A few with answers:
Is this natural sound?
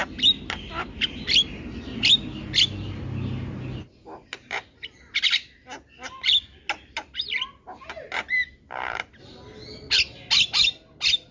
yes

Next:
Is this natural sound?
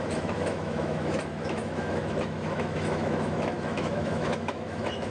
no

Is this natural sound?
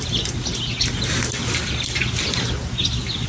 yes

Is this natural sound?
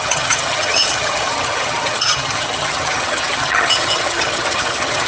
no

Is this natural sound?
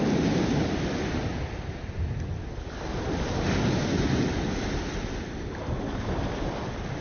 yes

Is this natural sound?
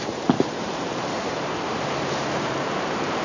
no